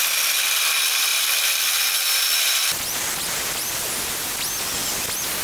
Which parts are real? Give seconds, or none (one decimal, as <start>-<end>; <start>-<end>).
0.0-5.4